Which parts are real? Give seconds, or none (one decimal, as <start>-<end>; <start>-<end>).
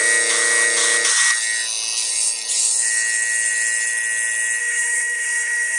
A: 0.0-4.6